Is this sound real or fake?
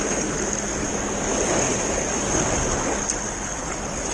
real